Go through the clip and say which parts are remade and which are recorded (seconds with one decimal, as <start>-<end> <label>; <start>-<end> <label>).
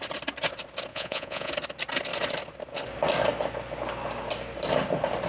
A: 0.0-0.9 recorded; 0.9-1.5 remade; 1.5-5.3 recorded